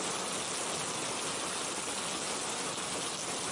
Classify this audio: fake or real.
real